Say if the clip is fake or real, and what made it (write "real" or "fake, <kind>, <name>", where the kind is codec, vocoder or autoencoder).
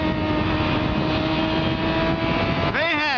real